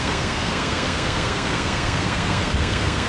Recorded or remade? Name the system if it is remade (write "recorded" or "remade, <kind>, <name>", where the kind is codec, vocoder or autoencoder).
remade, codec, SNAC